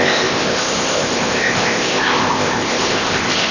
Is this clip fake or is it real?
fake